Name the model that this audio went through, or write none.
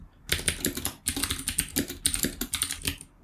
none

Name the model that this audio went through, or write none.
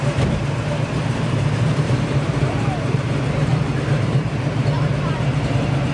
vocoder, BigVGAN v2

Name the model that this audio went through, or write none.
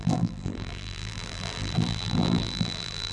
vocoder, BigVGAN v2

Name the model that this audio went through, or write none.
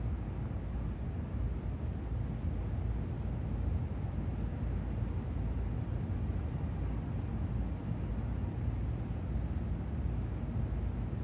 none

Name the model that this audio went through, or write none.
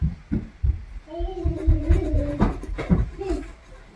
none